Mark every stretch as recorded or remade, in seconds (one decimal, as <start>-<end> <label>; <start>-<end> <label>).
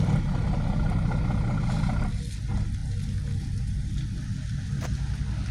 0.0-5.5 recorded